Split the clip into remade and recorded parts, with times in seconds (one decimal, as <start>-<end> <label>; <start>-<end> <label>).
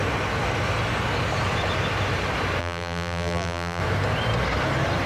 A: 0.0-2.6 recorded; 2.6-3.8 remade; 3.8-5.1 recorded